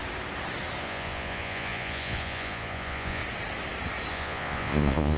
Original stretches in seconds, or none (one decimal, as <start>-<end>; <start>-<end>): 0.0-0.8; 3.2-4.1

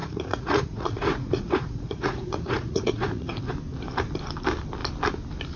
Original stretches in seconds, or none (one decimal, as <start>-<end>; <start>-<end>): 3.4-5.6

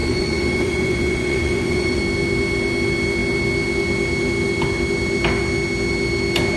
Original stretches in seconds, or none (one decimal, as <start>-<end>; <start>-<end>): 2.0-6.6

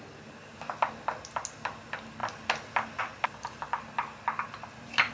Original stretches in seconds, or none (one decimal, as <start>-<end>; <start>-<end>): 0.0-5.1

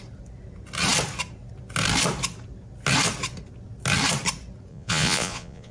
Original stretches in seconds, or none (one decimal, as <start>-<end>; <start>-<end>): 0.0-4.7

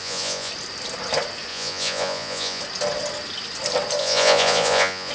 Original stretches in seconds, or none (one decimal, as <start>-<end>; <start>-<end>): 0.5-1.5; 2.6-4.0